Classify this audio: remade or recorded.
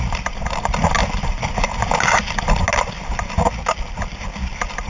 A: recorded